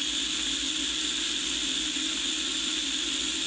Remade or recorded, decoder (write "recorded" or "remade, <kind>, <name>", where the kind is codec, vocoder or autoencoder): recorded